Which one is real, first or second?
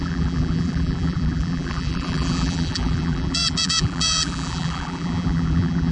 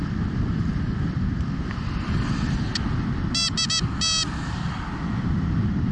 second